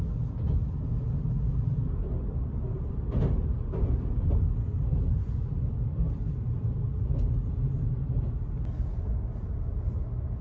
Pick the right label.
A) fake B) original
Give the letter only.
B